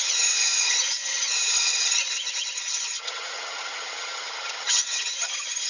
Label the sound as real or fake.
fake